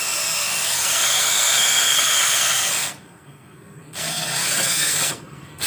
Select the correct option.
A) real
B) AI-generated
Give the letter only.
B